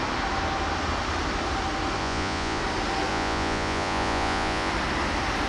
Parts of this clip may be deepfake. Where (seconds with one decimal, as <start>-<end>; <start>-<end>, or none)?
2.0-2.6; 3.1-4.7